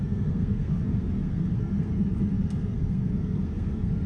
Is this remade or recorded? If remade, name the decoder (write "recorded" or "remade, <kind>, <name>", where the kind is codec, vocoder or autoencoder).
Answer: remade, codec, SNAC